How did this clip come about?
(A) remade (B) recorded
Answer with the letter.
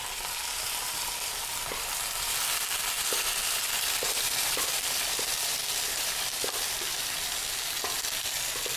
A